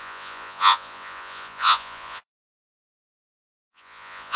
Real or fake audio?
fake